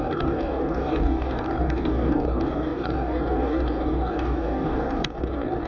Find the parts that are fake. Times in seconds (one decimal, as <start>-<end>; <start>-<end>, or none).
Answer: 0.0-5.7